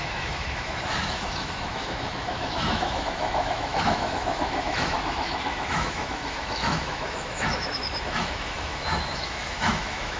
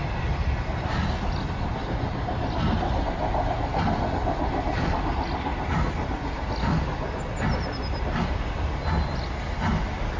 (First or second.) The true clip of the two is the second